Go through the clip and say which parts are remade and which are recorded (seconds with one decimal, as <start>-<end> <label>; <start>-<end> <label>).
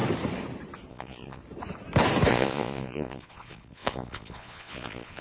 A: 0.0-0.9 recorded; 0.9-1.4 remade; 1.4-2.3 recorded; 2.3-5.2 remade